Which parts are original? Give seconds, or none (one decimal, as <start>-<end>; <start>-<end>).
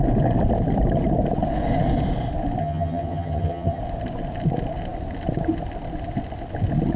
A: 0.0-2.6; 3.8-7.0